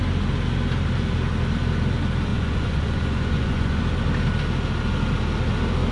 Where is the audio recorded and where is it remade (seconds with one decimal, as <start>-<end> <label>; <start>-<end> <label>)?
0.0-2.3 recorded; 2.3-3.8 remade; 3.8-5.9 recorded